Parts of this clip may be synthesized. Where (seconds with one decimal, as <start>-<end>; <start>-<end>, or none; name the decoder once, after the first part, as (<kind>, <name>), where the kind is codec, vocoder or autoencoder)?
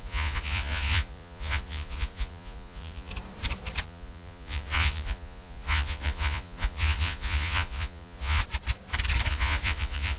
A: 0.0-3.1 (vocoder, Vocos); 3.8-8.4; 9.3-10.2